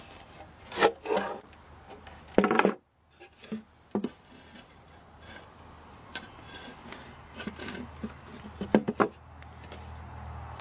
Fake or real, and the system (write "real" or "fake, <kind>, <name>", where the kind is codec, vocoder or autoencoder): real